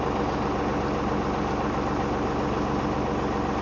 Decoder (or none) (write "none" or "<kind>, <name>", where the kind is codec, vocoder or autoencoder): none